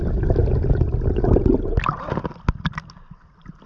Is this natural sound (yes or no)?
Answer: yes